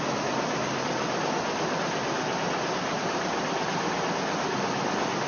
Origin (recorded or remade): recorded